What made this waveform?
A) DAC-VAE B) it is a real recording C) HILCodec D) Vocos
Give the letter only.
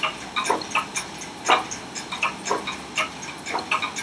B